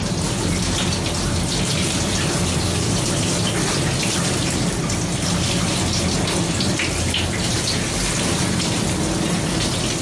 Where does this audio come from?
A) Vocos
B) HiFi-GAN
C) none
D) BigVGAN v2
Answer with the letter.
C